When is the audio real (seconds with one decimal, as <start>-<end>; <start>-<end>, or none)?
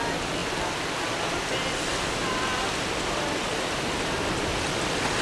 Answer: 0.0-5.2